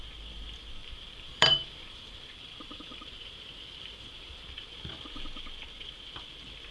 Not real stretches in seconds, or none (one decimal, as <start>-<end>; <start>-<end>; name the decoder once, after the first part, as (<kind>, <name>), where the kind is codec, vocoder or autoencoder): 0.8-4.8 (vocoder, BigVGAN v2)